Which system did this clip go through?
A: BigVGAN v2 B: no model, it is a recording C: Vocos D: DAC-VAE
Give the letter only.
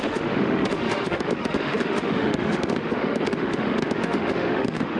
D